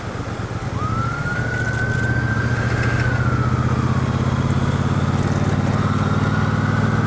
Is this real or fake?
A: real